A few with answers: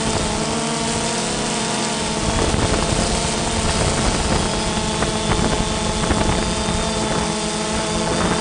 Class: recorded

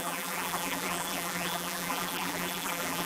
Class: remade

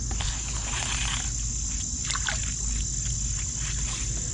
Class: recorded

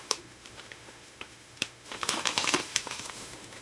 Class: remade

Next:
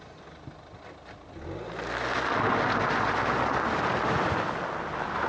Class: recorded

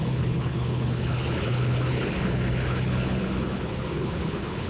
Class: remade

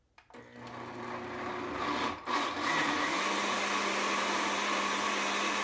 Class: recorded